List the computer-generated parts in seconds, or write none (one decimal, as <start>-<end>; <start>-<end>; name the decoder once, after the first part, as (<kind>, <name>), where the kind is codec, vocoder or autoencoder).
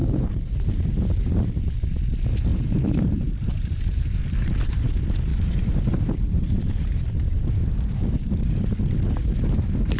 0.0-0.9 (vocoder, BigVGAN v2); 2.5-4.2; 5.3-8.7